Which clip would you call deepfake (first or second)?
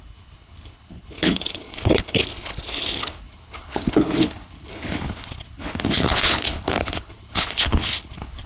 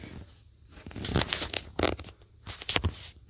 first